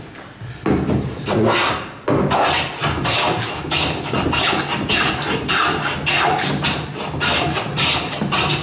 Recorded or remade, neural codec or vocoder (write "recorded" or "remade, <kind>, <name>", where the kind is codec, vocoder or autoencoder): recorded